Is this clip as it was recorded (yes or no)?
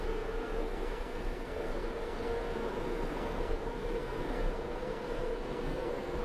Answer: no